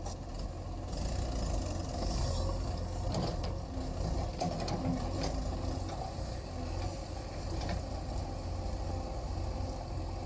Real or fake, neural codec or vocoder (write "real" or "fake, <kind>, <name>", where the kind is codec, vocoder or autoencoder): real